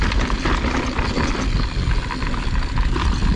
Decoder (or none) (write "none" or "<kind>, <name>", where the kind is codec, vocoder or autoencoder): none